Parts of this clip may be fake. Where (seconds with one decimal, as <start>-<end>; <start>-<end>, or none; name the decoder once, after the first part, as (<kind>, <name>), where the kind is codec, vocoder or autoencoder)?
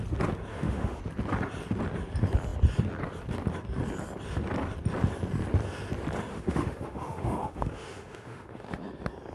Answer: 0.5-1.0 (autoencoder, DAC-VAE); 6.3-8.7